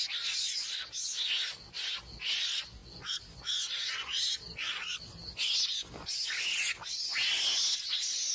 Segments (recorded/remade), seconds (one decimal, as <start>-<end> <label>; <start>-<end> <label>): 0.0-8.3 recorded